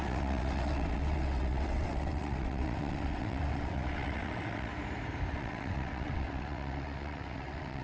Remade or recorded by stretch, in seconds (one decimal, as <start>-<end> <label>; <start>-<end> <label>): 0.0-4.7 remade; 4.7-5.3 recorded; 5.3-7.8 remade

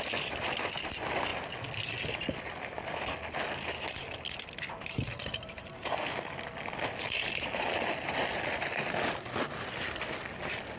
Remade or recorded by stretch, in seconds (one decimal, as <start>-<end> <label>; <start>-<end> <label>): 0.0-10.8 recorded

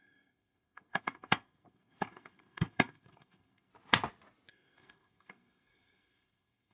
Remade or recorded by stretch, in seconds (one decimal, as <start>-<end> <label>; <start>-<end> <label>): 0.0-3.7 remade; 3.7-4.5 recorded; 4.5-6.7 remade

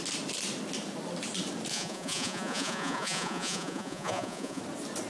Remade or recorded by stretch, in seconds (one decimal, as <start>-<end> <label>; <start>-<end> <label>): 0.0-1.7 recorded; 1.7-4.6 remade; 4.6-5.1 recorded

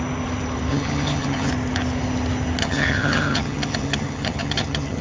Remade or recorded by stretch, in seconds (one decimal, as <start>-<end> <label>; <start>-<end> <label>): 0.0-0.7 recorded; 0.7-1.5 remade; 1.5-2.6 recorded; 2.6-5.0 remade

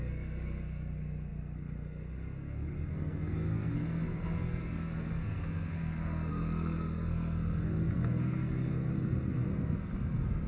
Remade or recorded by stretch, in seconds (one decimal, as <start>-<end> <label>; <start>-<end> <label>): 0.0-9.5 remade; 9.5-10.5 recorded